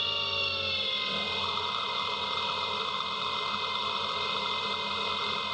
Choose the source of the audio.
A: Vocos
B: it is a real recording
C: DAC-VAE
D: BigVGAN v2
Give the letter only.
B